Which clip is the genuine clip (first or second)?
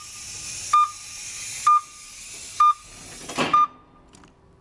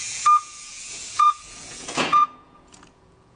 first